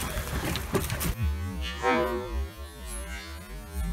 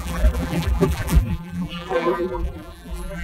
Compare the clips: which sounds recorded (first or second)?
first